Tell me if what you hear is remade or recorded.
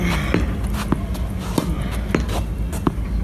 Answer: recorded